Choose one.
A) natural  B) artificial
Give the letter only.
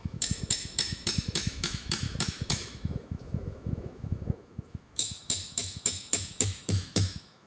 B